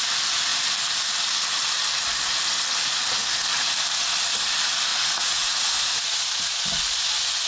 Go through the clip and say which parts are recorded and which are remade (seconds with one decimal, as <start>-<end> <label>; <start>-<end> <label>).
0.0-4.9 recorded; 4.9-6.6 remade; 6.6-7.5 recorded